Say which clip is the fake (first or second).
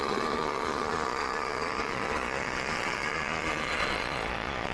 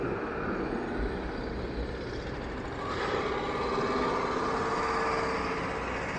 first